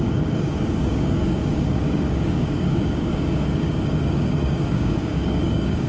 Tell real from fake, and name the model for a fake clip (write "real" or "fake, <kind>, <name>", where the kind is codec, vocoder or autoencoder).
fake, codec, DAC